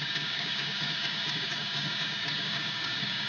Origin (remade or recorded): remade